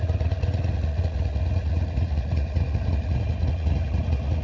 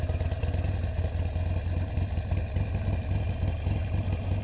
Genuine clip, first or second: second